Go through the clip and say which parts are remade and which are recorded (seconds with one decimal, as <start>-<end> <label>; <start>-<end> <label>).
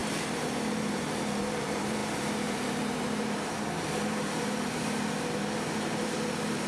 0.0-6.7 remade